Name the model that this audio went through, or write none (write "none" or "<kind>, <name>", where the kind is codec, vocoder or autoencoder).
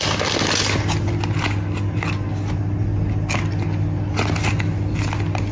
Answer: none